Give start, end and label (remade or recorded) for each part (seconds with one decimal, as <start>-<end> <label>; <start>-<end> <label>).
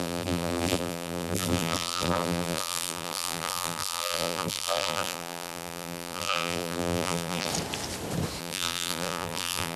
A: 0.0-7.5 remade; 7.5-8.4 recorded; 8.4-9.8 remade